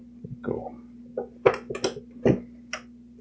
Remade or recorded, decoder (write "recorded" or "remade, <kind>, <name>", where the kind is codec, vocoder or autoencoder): recorded